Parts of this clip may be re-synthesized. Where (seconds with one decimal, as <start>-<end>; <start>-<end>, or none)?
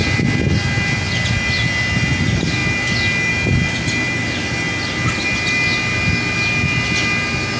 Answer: none